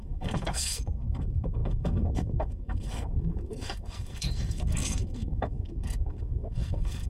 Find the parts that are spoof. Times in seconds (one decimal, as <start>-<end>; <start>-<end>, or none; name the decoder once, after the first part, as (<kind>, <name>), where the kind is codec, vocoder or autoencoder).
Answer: 0.0-7.1 (codec, SNAC)